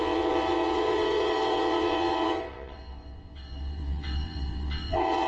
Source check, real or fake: fake